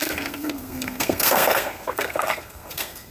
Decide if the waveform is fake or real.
fake